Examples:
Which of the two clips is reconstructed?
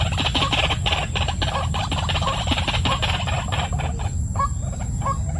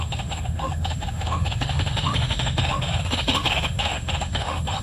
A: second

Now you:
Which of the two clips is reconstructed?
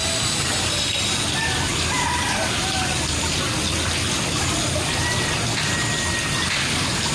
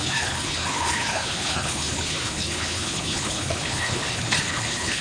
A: second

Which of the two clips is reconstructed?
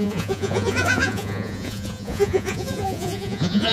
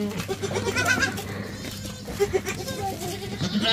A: first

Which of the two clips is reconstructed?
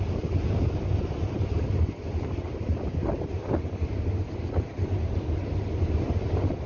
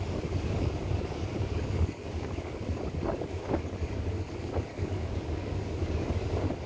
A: second